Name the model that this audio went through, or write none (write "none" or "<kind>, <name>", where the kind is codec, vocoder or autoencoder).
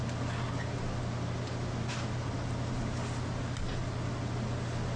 none